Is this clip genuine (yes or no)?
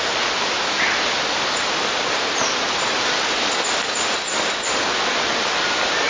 yes